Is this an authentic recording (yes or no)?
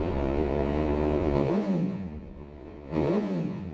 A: no